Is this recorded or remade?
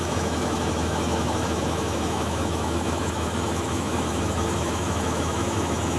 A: remade